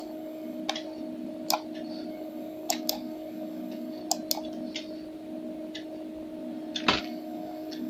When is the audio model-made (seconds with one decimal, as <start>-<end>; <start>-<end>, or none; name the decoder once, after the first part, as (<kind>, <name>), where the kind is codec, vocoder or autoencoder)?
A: 0.0-0.6 (codec, DAC); 2.1-4.0; 7.0-7.9